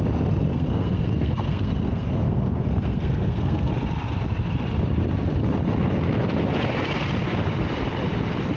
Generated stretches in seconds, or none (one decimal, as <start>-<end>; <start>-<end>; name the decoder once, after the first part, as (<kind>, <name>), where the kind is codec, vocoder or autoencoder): 0.5-3.7 (codec, SNAC)